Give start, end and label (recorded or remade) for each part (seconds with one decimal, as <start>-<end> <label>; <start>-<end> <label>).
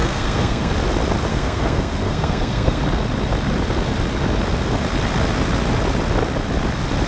0.0-0.7 remade; 0.7-1.3 recorded; 1.3-2.8 remade; 2.8-7.1 recorded